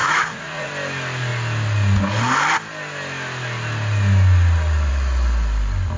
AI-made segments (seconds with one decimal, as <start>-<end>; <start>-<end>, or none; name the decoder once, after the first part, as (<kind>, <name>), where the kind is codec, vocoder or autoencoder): 0.0-0.7 (vocoder, Vocos)